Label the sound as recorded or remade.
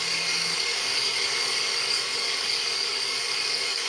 remade